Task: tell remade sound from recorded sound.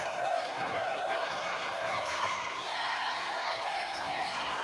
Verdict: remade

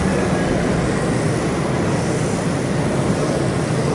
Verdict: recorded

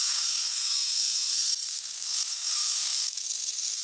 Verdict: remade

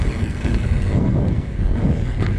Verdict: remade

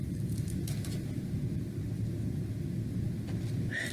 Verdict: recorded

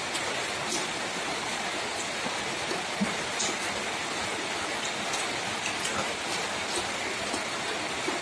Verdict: recorded